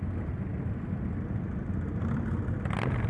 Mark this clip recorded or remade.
recorded